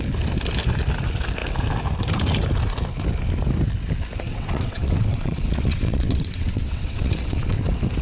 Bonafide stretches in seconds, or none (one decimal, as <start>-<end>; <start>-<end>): 0.0-4.3; 7.6-8.0